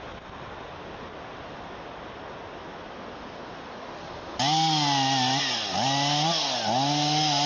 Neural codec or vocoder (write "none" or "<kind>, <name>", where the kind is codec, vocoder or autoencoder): none